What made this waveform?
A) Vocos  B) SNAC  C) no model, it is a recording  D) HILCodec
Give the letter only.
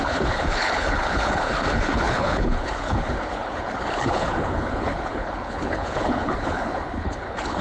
D